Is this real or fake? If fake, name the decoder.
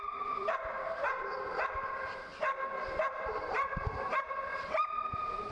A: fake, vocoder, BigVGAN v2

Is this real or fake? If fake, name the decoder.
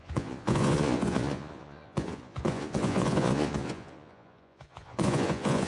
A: fake, vocoder, Vocos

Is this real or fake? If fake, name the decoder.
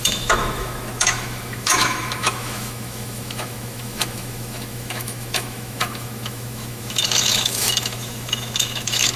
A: fake, autoencoder, DAC-VAE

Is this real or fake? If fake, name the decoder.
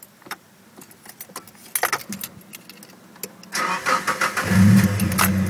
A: real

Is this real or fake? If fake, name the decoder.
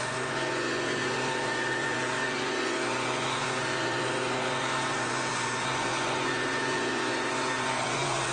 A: fake, vocoder, Vocos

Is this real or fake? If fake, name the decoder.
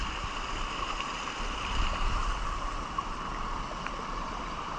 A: fake, vocoder, BigVGAN v2